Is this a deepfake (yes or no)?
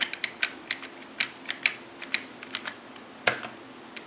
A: no